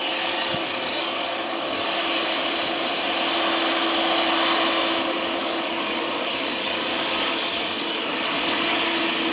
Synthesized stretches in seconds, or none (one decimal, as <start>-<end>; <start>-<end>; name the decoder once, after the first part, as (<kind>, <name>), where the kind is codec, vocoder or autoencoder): 0.0-2.0 (codec, DAC); 5.4-8.8